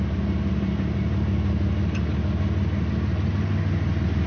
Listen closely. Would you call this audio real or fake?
real